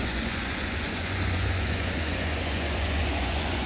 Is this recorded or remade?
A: remade